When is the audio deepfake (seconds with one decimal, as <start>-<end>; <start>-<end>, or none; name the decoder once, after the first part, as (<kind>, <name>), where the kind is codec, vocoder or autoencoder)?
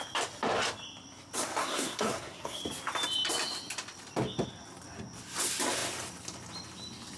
1.6-2.6 (codec, SNAC)